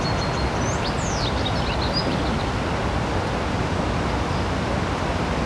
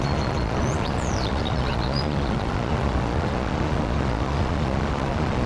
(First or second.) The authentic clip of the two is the first